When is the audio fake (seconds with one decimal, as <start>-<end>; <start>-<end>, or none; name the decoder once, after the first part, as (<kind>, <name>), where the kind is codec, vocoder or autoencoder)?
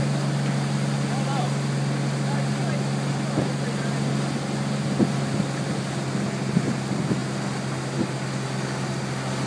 none